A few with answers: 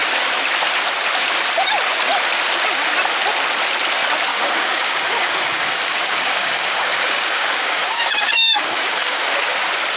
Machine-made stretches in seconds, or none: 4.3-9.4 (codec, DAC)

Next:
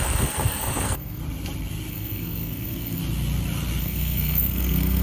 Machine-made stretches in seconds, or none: 0.0-1.2 (codec, SNAC); 1.9-3.0; 3.8-5.0

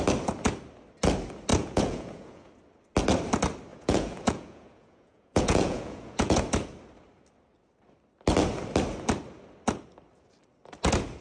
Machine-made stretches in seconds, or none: 1.5-2.5 (vocoder, Vocos); 3.7-6.4